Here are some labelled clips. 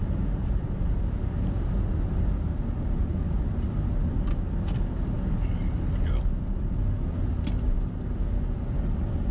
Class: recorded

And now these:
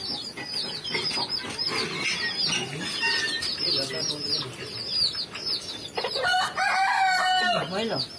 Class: recorded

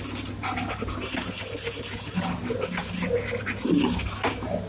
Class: recorded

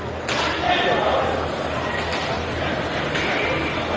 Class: recorded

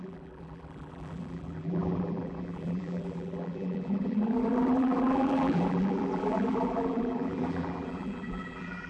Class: remade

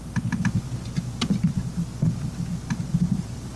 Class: recorded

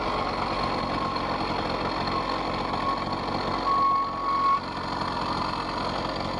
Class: recorded